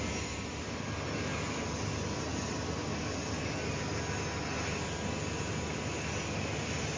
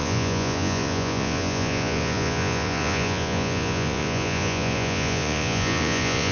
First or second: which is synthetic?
second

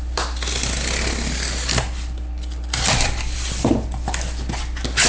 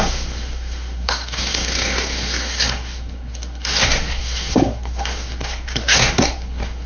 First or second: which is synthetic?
second